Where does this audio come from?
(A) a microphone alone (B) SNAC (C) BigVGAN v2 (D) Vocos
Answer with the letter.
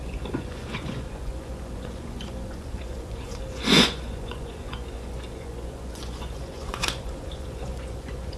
D